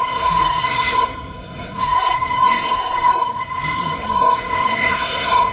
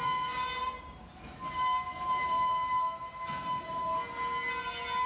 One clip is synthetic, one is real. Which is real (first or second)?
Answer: second